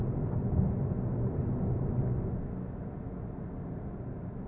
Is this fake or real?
real